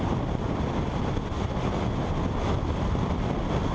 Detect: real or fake real